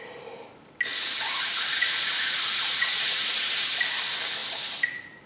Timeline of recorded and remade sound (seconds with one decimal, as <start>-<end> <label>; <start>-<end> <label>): 0.0-0.9 recorded; 0.9-3.5 remade; 3.5-5.3 recorded

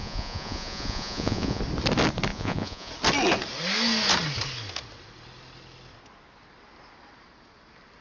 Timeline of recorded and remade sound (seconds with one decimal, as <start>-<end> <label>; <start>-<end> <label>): 0.0-1.6 remade; 1.6-2.3 recorded; 2.3-2.9 remade; 2.9-8.0 recorded

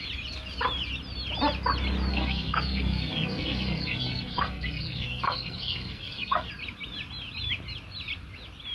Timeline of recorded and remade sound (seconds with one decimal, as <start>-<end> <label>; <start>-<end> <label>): 0.0-2.1 recorded; 2.1-6.5 remade; 6.5-8.7 recorded

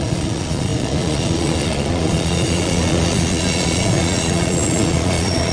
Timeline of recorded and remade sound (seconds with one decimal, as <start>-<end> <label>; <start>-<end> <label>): 0.0-5.5 remade

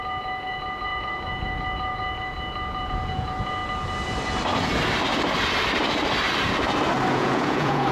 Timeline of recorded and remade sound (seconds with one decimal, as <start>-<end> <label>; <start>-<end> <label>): 0.0-3.6 remade; 3.6-7.1 recorded; 7.1-7.9 remade

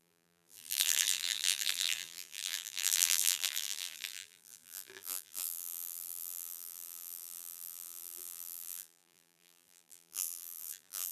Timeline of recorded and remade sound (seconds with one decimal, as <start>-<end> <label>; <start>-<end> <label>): 0.0-11.1 remade